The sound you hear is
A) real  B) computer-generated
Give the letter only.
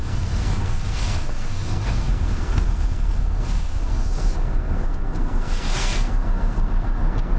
B